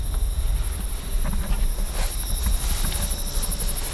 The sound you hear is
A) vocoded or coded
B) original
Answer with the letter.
B